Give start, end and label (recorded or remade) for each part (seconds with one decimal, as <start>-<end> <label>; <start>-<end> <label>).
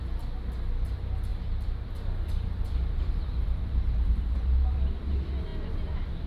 0.0-1.3 recorded; 1.3-5.1 remade; 5.1-6.3 recorded